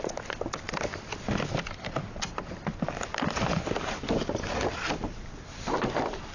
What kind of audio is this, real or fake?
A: real